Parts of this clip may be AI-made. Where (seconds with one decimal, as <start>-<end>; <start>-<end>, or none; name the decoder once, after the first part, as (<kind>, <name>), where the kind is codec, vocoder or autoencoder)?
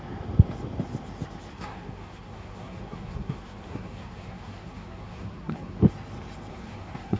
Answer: 1.5-5.8 (codec, SNAC); 6.5-7.2